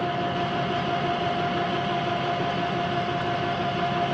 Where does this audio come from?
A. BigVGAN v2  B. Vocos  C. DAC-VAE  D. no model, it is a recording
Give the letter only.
D